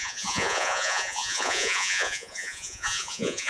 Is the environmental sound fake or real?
fake